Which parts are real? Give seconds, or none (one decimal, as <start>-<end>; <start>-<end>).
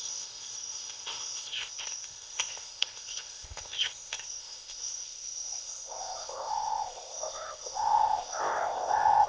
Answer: none